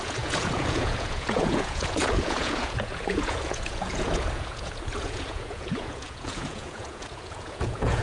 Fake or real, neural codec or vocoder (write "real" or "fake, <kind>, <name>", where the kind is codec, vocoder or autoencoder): fake, vocoder, Vocos